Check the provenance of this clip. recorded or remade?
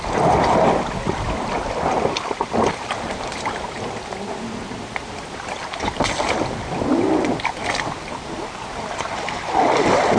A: recorded